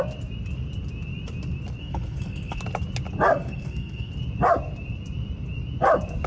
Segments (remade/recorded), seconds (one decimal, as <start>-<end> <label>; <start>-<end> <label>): 0.0-1.8 recorded; 1.8-2.6 remade; 2.6-3.3 recorded; 3.3-4.1 remade; 4.1-6.3 recorded